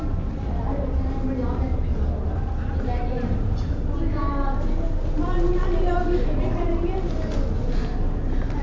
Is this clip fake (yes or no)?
no